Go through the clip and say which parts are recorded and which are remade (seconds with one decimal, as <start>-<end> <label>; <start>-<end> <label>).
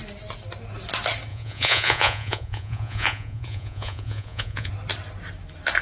0.0-1.3 recorded; 1.3-4.7 remade; 4.7-5.8 recorded